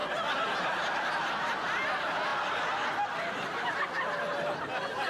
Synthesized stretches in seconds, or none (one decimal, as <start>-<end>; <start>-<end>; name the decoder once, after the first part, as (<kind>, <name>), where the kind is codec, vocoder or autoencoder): none